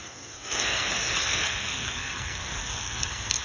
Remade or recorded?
remade